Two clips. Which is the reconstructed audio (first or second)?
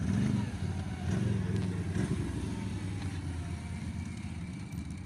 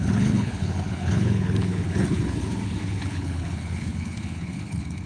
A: second